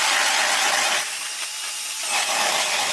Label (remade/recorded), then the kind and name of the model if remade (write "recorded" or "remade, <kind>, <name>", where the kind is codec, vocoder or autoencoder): recorded